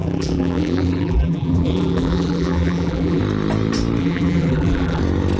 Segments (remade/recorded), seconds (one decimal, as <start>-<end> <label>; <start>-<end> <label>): 0.0-3.2 remade; 3.2-4.0 recorded; 4.0-5.0 remade; 5.0-5.4 recorded